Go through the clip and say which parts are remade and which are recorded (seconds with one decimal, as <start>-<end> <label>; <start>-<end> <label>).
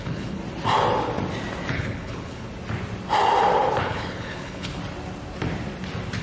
0.0-0.4 remade; 0.4-1.7 recorded; 1.7-2.5 remade; 2.5-3.8 recorded; 3.8-4.8 remade; 4.8-6.2 recorded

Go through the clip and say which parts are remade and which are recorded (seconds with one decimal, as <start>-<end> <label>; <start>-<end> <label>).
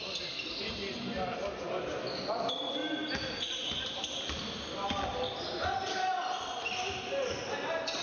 0.0-2.8 recorded; 2.8-7.6 remade; 7.6-8.0 recorded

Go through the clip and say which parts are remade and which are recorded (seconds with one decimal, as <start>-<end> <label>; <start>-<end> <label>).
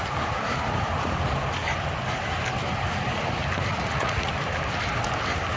0.0-3.7 recorded; 3.7-4.3 remade; 4.3-5.6 recorded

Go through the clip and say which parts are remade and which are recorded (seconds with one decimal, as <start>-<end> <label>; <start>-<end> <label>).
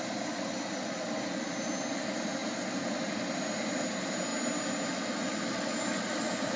0.0-6.6 recorded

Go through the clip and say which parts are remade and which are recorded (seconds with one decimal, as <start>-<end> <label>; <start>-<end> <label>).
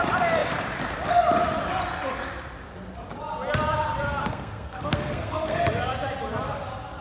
0.0-4.2 recorded; 4.2-5.6 remade; 5.6-7.0 recorded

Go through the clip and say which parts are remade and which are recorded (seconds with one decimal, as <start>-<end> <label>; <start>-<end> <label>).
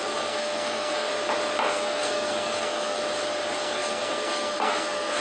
0.0-1.1 remade; 1.1-1.7 recorded; 1.7-3.0 remade; 3.0-3.6 recorded; 3.6-5.2 remade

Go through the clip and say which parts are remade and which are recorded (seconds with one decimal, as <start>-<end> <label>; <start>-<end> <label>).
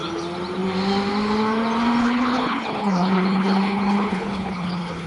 0.0-2.0 recorded; 2.0-5.1 remade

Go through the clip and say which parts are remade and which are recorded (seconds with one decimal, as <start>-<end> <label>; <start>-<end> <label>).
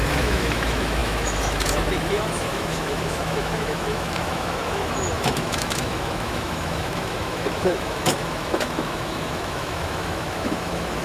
0.0-11.0 remade